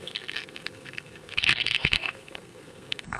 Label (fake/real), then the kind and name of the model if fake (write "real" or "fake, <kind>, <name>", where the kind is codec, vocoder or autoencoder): fake, codec, SNAC